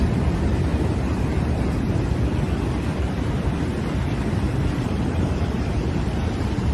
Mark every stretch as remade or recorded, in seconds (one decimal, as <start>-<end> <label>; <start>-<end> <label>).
0.0-6.7 remade